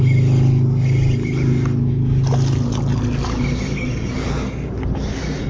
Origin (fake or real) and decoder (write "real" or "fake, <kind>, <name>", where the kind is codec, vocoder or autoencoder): real